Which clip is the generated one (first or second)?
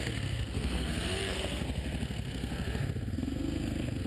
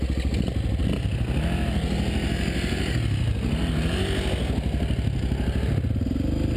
first